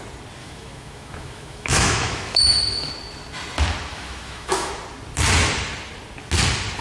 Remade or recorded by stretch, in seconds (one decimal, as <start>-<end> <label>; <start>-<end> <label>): 0.0-0.4 recorded; 0.4-2.9 remade; 2.9-3.9 recorded; 3.9-4.7 remade; 4.7-6.8 recorded